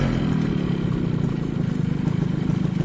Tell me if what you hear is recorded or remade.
recorded